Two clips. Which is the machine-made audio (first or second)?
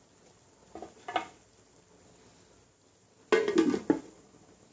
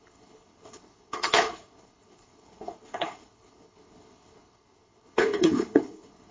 second